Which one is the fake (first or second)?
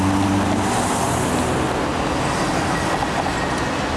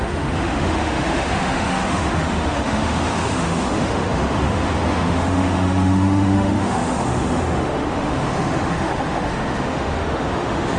second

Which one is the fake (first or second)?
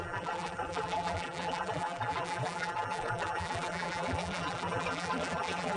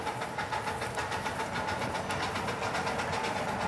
first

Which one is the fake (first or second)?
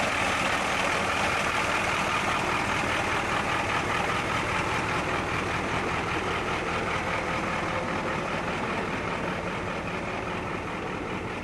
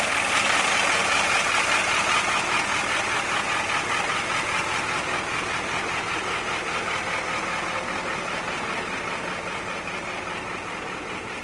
first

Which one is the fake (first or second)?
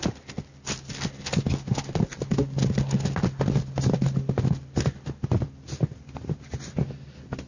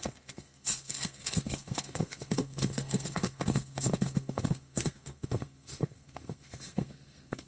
second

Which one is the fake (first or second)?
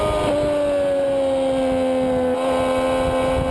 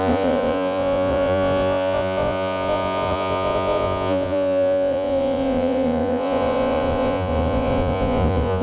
second